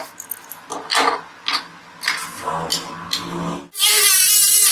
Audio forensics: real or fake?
real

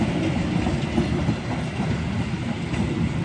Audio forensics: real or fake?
real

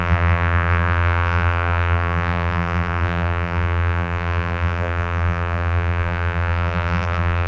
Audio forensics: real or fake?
fake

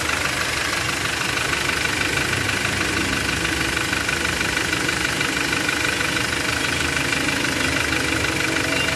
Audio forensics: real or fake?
real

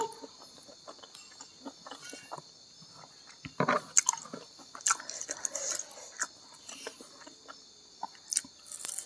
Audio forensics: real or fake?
real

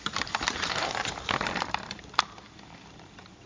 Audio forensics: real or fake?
fake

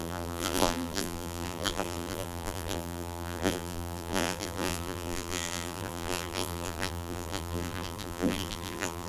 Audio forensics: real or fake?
fake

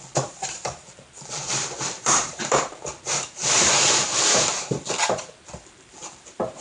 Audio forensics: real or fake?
fake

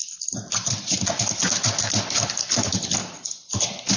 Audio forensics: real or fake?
real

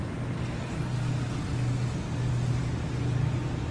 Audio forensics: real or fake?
real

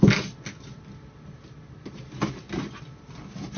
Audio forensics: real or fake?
real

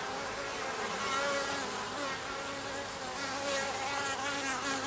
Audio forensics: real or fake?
real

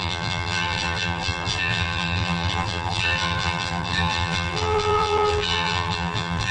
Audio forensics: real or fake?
fake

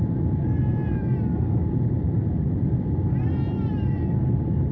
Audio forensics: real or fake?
fake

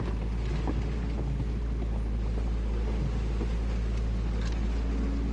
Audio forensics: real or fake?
real